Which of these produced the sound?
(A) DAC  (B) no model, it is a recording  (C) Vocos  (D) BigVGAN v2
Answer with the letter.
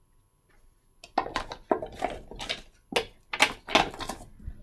B